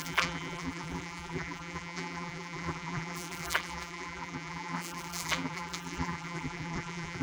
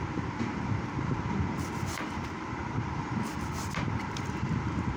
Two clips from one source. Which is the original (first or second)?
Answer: second